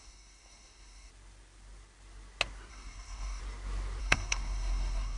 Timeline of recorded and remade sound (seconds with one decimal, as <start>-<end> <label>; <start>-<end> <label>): 0.0-1.1 remade; 1.1-2.7 recorded; 2.7-3.4 remade; 3.4-4.0 recorded; 4.0-5.2 remade

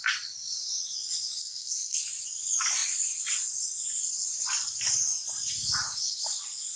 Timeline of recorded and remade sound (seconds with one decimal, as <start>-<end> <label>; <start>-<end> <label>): 0.0-1.4 recorded; 1.4-2.0 remade; 2.0-6.8 recorded

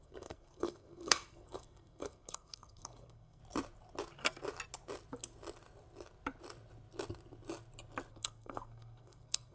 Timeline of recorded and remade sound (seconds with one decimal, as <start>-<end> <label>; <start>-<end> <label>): 0.0-3.4 remade; 3.4-8.1 recorded; 8.1-9.5 remade

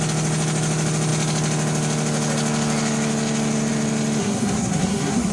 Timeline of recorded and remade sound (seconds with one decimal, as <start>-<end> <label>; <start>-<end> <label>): 0.0-4.2 recorded; 4.2-5.3 remade